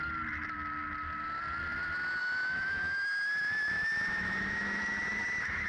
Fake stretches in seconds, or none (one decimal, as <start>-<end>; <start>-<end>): 2.2-5.7